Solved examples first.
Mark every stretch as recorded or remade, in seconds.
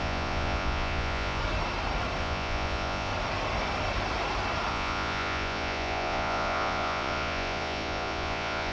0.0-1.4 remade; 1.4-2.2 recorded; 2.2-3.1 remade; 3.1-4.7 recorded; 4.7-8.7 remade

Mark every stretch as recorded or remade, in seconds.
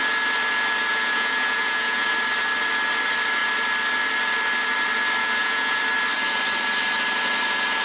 0.0-0.9 recorded; 0.9-2.1 remade; 2.1-5.2 recorded; 5.2-5.8 remade; 5.8-7.8 recorded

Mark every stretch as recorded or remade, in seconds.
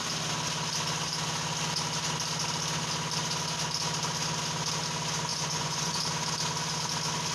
0.0-5.3 recorded; 5.3-6.0 remade; 6.0-7.3 recorded